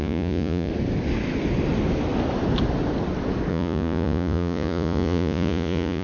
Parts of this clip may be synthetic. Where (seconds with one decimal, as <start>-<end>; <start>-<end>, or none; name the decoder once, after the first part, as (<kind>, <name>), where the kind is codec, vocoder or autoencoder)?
0.0-0.7 (vocoder, Vocos); 3.5-6.0